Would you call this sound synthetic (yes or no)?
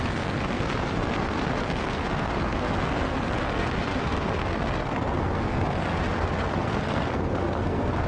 yes